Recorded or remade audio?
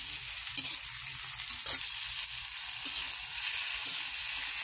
recorded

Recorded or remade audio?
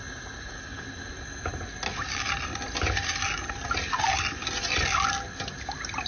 recorded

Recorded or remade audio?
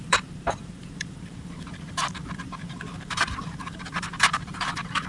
remade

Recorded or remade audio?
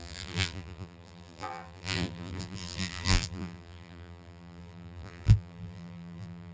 remade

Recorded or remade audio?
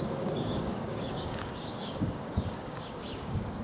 remade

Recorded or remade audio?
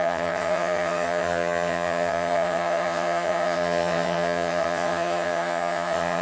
remade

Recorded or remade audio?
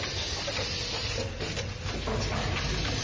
recorded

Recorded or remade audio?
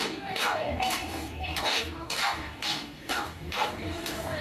remade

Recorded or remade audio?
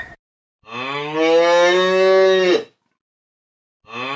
recorded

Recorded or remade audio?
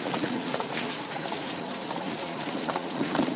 remade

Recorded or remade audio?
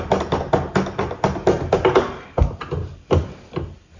recorded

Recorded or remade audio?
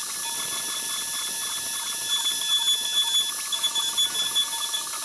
recorded